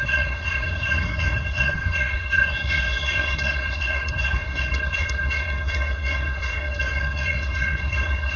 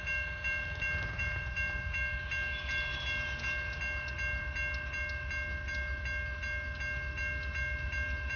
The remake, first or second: first